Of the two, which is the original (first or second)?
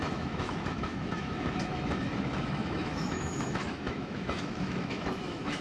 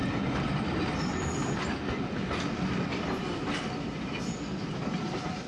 second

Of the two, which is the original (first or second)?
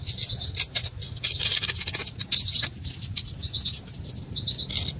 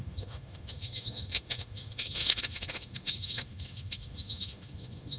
first